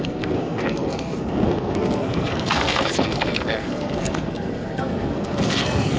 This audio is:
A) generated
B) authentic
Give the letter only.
A